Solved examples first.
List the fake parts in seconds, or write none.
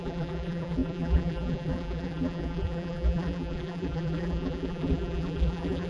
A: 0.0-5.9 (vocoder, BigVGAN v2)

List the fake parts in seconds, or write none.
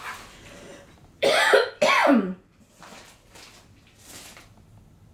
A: 0.7-1.3 (vocoder, BigVGAN v2)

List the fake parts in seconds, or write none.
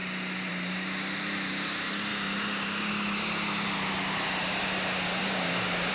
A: 2.1-2.9 (codec, DAC); 5.2-5.9